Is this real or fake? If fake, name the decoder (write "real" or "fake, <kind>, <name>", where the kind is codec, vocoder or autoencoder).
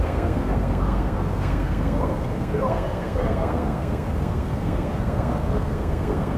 fake, codec, SNAC